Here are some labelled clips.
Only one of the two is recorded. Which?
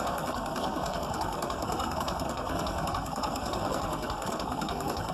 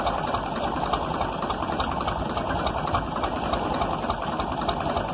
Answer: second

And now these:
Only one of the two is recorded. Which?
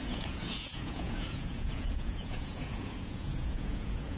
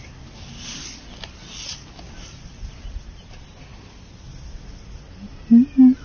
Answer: second